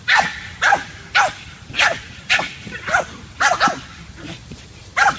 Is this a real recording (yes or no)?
no